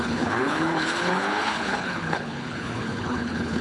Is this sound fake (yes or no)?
yes